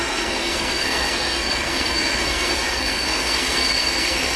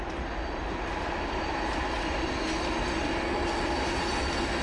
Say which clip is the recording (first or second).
second